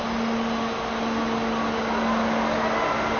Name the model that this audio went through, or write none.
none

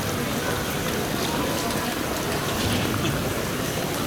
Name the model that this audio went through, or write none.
none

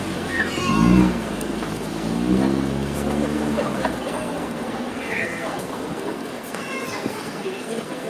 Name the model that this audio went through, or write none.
codec, SNAC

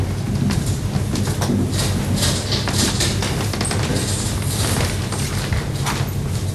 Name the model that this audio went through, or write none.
none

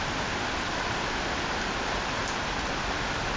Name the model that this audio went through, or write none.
none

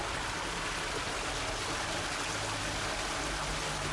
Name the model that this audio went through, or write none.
none